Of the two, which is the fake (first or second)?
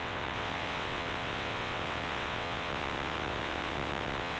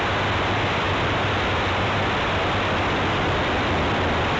first